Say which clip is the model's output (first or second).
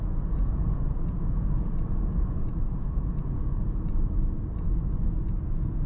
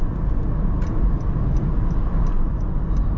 first